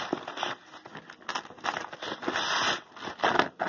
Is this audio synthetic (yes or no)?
no